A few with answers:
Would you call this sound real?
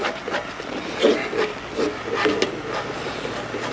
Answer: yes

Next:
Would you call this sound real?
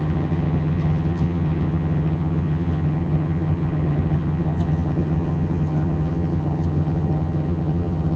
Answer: no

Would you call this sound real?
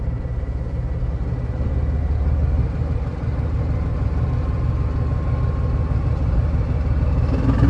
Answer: yes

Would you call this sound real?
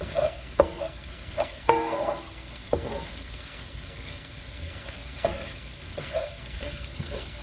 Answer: no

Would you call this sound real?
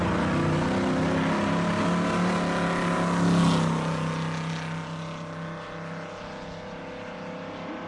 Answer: yes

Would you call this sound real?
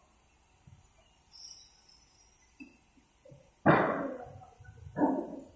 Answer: yes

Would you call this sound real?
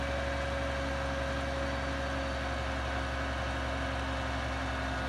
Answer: yes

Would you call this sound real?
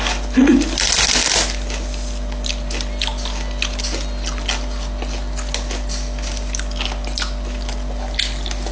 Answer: yes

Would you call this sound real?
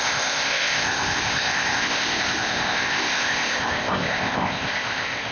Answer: no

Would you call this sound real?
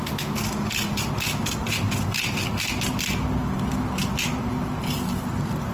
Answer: yes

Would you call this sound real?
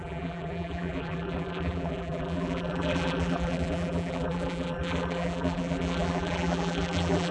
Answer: no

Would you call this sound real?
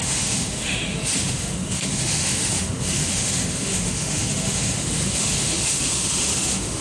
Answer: no